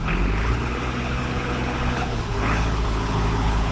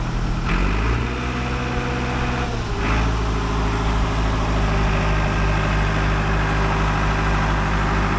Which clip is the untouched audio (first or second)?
second